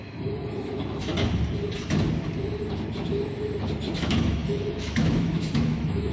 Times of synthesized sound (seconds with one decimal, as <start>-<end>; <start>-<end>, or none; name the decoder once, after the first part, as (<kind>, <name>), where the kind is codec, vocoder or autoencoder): 0.0-1.1 (autoencoder, DAC-VAE); 4.0-6.1